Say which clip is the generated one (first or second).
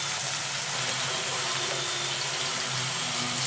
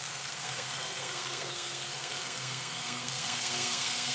second